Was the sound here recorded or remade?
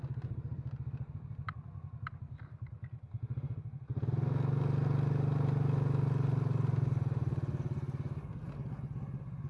recorded